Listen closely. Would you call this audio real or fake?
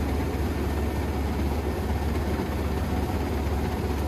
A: real